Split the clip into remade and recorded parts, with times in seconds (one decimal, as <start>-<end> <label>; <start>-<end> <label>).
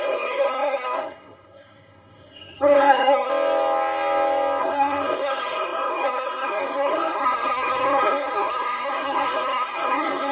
0.0-3.3 remade; 3.3-4.6 recorded; 4.6-10.3 remade